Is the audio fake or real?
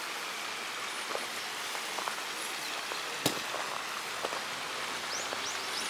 real